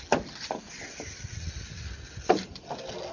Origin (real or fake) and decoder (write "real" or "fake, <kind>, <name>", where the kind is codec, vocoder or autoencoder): real